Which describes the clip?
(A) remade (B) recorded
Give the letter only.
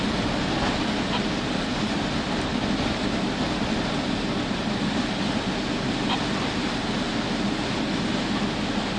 B